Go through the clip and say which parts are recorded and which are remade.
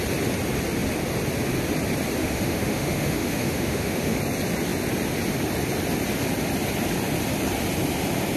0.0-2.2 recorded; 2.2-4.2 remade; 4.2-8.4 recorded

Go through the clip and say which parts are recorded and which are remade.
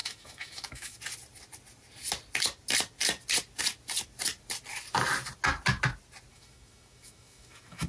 0.0-1.0 remade; 1.0-6.3 recorded; 6.3-7.9 remade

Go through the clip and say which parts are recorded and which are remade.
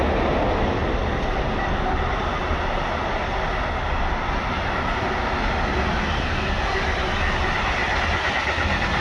0.0-9.0 recorded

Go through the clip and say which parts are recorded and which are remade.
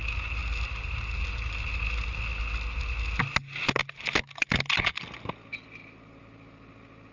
0.0-7.1 recorded